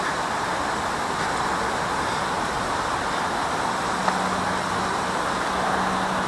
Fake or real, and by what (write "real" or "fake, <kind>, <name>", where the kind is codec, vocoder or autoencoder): real